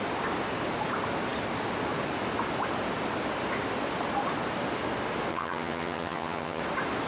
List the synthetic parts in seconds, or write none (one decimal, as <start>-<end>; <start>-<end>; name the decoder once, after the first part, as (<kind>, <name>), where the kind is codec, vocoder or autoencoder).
5.3-6.6 (vocoder, HiFi-GAN)